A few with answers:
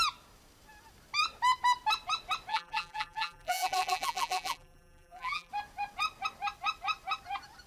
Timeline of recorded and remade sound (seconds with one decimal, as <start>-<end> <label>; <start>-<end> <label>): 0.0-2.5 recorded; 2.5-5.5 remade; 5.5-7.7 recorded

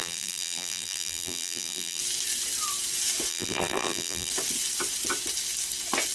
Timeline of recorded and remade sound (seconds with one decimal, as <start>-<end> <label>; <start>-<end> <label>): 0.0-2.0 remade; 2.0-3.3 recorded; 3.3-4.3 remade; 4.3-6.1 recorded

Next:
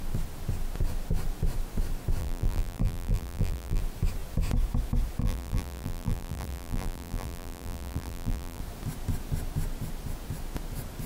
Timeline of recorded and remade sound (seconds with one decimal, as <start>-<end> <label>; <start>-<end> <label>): 0.0-2.2 recorded; 2.2-3.8 remade; 3.8-5.2 recorded; 5.2-8.6 remade; 8.6-11.1 recorded